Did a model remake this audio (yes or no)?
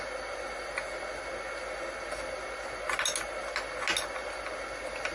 no